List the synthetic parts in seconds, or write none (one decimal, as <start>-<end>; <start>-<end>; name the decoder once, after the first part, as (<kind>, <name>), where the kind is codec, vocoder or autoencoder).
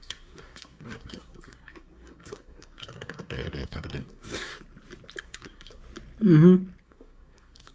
0.0-4.5 (codec, SNAC); 5.2-5.8; 6.8-7.7